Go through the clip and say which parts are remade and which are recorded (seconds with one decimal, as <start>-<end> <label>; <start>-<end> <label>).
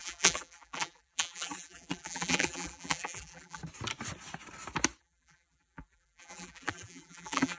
0.0-3.6 remade; 3.6-5.0 recorded; 5.0-7.6 remade